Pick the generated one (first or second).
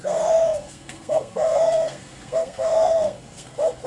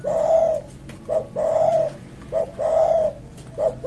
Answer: first